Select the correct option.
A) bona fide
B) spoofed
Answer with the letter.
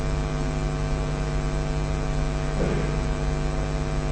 A